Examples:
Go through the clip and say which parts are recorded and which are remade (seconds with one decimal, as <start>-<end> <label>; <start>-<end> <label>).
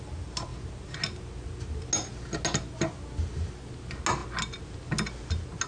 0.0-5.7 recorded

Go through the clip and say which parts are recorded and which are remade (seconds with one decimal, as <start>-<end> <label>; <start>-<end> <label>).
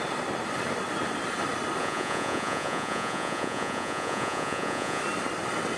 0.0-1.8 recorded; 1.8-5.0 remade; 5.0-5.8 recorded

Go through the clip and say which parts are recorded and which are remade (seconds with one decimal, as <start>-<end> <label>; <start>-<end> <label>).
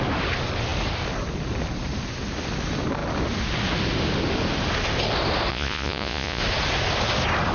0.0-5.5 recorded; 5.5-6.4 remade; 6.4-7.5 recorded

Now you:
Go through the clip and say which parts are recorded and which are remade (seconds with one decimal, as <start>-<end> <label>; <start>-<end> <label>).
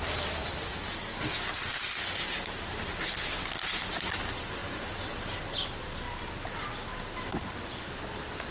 0.0-8.5 recorded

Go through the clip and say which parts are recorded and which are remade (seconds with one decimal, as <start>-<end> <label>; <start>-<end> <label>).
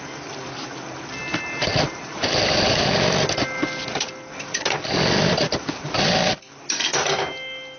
0.0-7.8 recorded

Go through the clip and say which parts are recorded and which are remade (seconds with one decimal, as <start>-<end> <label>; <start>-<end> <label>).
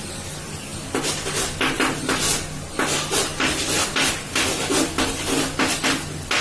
0.0-6.4 recorded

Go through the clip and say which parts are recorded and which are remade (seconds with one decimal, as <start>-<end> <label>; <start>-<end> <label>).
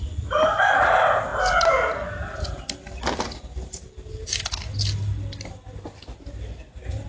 0.0-7.1 recorded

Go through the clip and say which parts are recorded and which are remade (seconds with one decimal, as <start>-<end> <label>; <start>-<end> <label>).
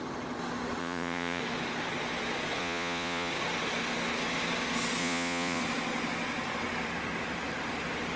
0.0-0.8 recorded; 0.8-1.4 remade; 1.4-2.6 recorded; 2.6-3.3 remade; 3.3-5.0 recorded; 5.0-5.6 remade; 5.6-8.2 recorded